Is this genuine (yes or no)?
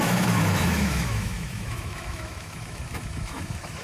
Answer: no